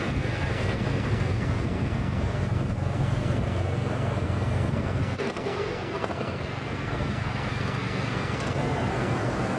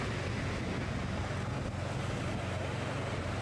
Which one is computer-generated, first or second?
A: first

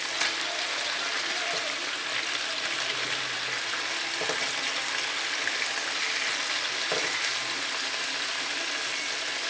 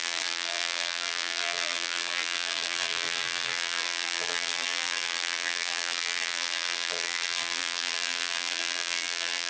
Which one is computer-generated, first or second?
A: second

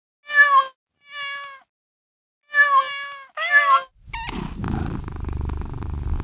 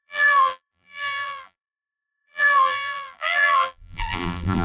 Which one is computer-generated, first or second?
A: second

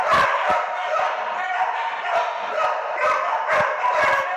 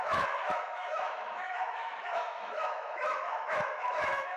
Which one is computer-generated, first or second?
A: second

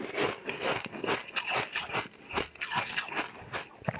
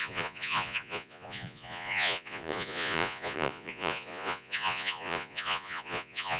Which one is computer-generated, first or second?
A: second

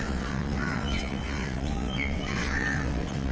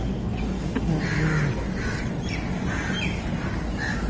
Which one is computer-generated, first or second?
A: first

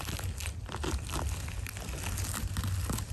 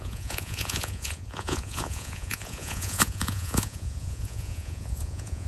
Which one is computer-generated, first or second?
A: second